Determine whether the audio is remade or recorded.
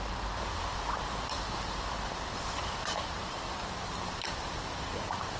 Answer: remade